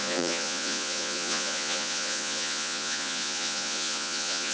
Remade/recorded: remade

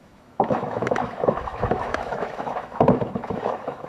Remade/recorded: remade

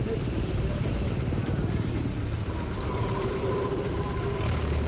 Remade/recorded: remade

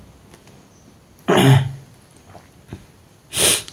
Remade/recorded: recorded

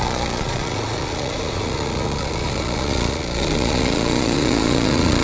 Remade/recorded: remade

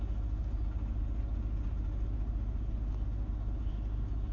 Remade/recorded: recorded